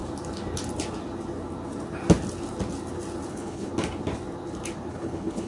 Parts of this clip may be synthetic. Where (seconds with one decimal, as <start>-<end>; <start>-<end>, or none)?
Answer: 3.3-3.7; 4.9-5.5